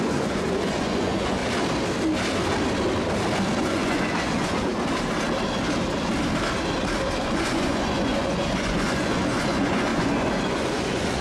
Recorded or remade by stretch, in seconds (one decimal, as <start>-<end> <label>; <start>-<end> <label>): 0.0-1.4 remade; 1.4-3.6 recorded; 3.6-4.7 remade; 4.7-7.2 recorded; 7.2-11.2 remade